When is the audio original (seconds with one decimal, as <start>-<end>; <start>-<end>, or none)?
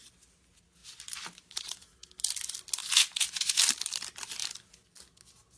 0.0-2.8; 3.6-5.6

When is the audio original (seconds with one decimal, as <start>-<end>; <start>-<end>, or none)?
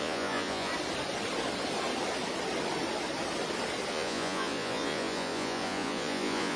0.7-3.9